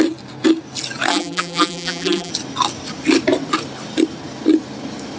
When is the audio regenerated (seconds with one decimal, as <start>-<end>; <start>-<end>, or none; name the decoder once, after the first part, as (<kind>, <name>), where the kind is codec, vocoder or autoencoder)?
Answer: 1.1-2.3 (vocoder, BigVGAN v2)

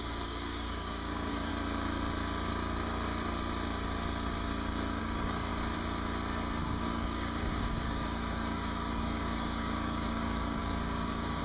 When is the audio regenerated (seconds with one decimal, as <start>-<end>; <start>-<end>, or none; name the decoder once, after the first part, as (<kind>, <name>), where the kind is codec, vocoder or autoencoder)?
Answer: 0.0-1.5 (codec, DAC); 5.0-5.5; 6.6-11.4

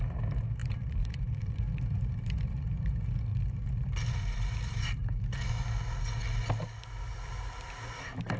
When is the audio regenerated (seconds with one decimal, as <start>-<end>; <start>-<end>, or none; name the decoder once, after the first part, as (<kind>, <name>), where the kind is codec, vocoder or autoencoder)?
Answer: 0.6-2.9 (vocoder, BigVGAN v2); 3.3-5.2

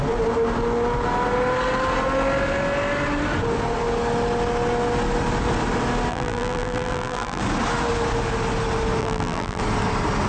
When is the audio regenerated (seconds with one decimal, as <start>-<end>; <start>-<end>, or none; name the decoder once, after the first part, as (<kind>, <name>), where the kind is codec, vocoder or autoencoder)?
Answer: 6.1-7.4 (vocoder, BigVGAN v2); 9.0-9.6

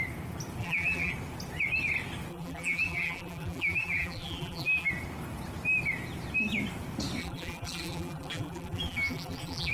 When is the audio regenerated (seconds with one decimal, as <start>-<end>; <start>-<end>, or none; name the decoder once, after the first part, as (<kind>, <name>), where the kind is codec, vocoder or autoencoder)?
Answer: 0.6-1.1 (vocoder, BigVGAN v2); 2.3-4.9; 7.2-9.7

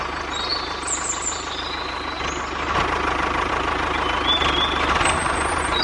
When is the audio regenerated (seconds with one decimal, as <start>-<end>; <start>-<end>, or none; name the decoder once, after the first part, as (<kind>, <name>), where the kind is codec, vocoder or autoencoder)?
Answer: 5.2-5.8 (vocoder, Vocos)

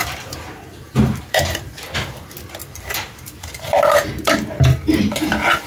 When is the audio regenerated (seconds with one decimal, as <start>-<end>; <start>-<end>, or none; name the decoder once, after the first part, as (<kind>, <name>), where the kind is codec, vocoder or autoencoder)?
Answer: 0.0-1.7 (vocoder, BigVGAN v2); 2.6-3.8

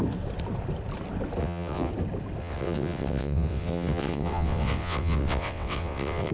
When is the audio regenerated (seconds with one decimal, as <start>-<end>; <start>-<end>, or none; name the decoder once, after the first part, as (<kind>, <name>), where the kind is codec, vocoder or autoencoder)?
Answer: 1.4-1.9 (vocoder, WaveNeXt); 2.4-6.3